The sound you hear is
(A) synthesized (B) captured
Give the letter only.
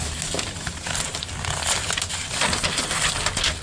B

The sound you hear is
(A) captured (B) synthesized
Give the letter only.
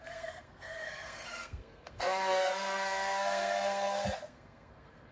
B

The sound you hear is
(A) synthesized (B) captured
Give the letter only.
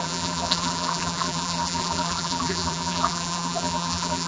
A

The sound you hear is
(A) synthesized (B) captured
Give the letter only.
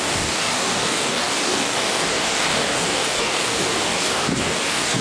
A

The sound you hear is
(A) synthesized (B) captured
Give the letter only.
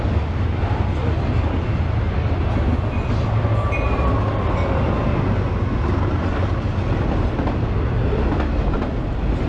B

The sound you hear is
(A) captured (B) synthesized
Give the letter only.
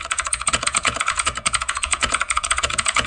B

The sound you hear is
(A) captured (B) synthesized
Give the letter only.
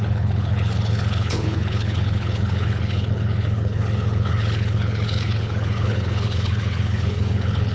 B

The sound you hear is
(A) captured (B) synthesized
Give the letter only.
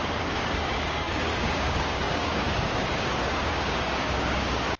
B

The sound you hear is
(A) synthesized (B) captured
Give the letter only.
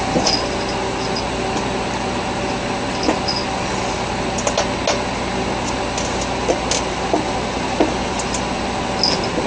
B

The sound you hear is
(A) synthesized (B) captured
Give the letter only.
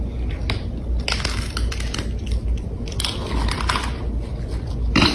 B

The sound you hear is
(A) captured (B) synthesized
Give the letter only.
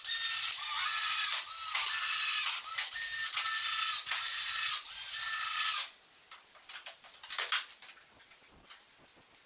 A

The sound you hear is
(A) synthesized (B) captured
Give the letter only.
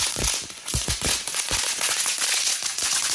A